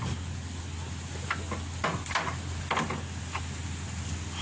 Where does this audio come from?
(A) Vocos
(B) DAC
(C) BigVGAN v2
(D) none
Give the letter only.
D